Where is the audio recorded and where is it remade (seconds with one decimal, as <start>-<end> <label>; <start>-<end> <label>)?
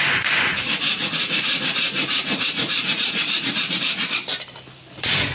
0.0-0.5 recorded; 0.5-3.7 remade; 3.7-5.3 recorded